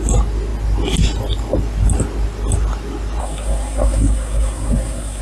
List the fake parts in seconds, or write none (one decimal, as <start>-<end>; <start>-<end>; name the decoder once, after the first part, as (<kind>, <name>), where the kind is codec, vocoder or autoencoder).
3.2-5.2 (codec, SNAC)